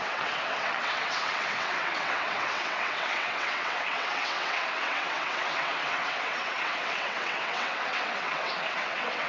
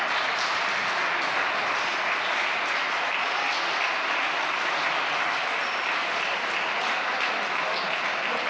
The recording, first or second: second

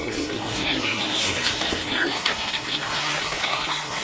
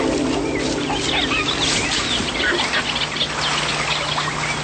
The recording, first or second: second